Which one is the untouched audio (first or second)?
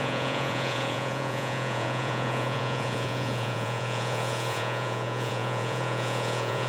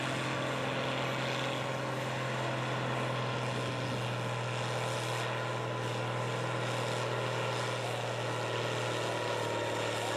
second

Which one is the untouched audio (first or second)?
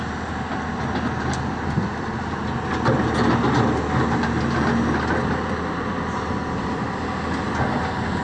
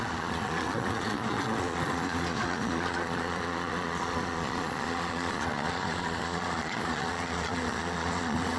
first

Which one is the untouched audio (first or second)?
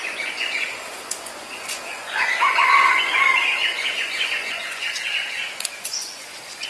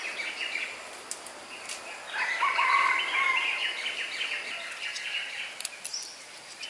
second